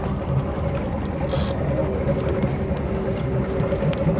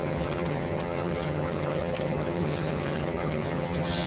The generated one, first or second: second